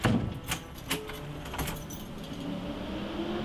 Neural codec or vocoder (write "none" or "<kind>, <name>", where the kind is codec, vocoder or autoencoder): none